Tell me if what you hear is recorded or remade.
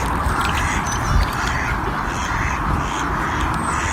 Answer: recorded